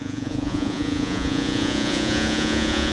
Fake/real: fake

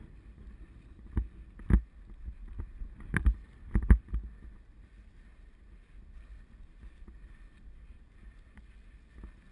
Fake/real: real